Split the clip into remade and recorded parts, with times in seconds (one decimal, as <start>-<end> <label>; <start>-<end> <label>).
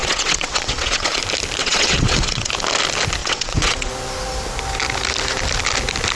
0.0-1.2 remade; 1.2-1.6 recorded; 1.6-2.5 remade; 2.5-3.2 recorded; 3.2-3.9 remade; 3.9-6.1 recorded